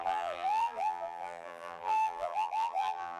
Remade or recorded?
remade